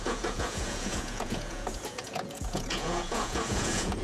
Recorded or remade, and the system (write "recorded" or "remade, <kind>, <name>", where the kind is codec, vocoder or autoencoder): remade, vocoder, Vocos